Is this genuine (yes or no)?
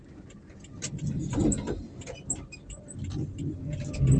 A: yes